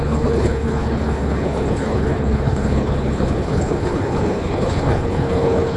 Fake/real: fake